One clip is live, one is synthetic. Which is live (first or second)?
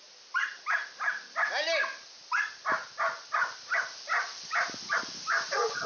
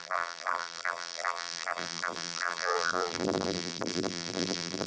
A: first